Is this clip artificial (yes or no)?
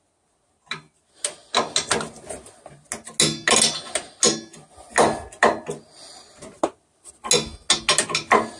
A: no